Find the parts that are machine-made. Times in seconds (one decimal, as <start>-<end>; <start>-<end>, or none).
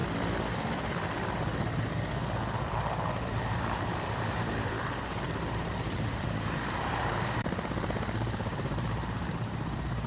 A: 3.1-10.1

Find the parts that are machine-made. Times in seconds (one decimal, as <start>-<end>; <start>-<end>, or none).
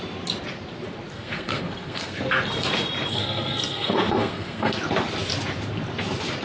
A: 1.1-2.2; 3.1-4.8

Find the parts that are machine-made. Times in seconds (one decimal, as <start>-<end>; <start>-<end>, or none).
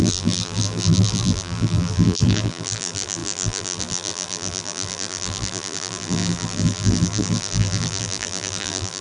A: 0.0-9.0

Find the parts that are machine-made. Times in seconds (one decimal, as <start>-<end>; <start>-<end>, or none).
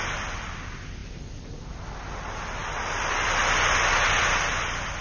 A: 1.0-1.8; 2.6-4.5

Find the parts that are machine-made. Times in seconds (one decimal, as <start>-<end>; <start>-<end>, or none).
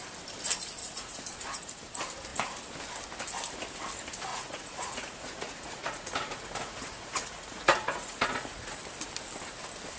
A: 0.8-1.8; 4.3-8.8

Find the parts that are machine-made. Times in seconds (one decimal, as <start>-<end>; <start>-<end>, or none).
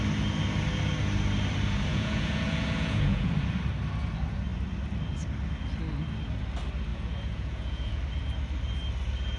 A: 1.9-3.3; 6.9-8.0